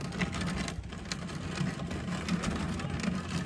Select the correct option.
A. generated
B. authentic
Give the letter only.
B